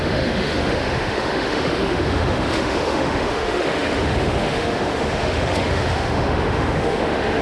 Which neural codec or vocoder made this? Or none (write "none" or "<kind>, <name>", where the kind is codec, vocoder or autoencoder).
autoencoder, DAC-VAE